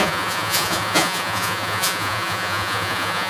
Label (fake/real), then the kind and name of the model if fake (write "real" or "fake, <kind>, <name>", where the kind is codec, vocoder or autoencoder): fake, vocoder, Vocos